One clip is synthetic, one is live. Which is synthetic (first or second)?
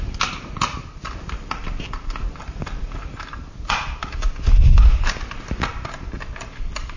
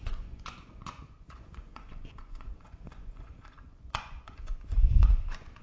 second